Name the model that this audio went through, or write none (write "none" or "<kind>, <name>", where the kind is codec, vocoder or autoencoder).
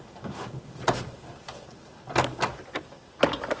none